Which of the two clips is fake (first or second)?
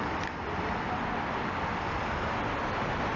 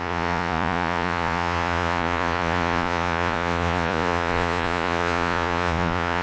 second